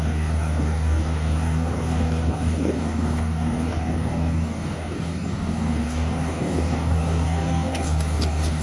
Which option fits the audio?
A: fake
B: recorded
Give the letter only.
A